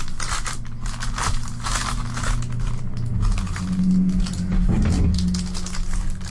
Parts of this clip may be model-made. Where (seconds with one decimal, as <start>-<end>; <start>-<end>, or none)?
none